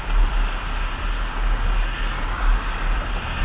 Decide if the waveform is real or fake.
real